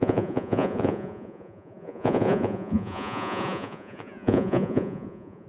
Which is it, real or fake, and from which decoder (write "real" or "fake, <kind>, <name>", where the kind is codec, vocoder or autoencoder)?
fake, vocoder, Vocos